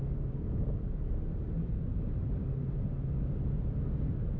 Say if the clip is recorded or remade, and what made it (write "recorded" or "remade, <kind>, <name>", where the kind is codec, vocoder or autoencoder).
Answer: recorded